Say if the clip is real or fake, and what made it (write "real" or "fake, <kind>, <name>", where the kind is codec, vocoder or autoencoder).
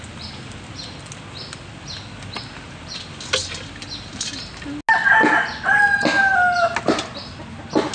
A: real